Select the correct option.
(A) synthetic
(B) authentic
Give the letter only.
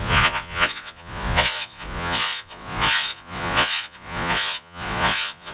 A